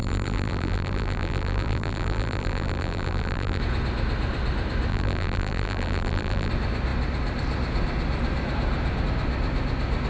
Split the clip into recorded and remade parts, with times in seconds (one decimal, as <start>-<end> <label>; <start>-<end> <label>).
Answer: 0.0-3.6 remade; 3.6-4.9 recorded; 4.9-6.5 remade; 6.5-10.1 recorded